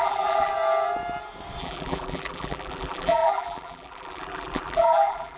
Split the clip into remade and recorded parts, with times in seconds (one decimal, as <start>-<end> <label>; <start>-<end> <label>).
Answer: 0.0-0.5 remade; 0.5-1.6 recorded; 1.6-5.4 remade